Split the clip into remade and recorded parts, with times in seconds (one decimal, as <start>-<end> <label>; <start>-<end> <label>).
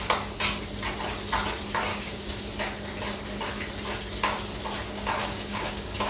0.0-1.9 recorded; 1.9-2.4 remade; 2.4-5.2 recorded; 5.2-6.1 remade